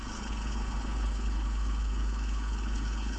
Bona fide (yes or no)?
no